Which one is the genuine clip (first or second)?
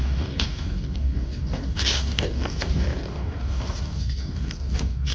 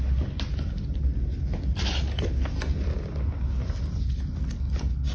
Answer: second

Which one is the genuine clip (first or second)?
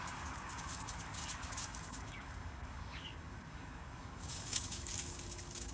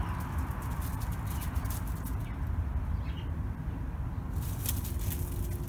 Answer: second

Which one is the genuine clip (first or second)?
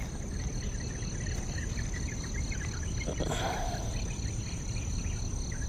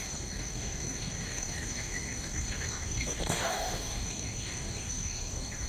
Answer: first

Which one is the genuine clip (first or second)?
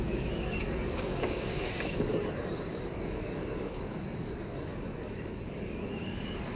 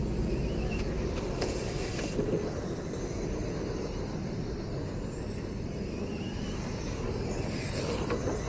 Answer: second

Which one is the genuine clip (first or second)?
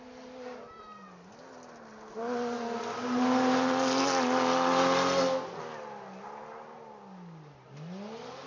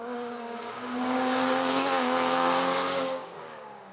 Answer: first